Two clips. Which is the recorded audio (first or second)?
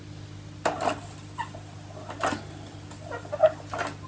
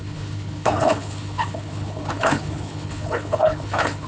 first